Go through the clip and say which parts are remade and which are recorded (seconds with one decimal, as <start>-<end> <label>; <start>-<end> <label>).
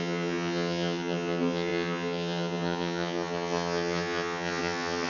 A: 0.0-5.1 remade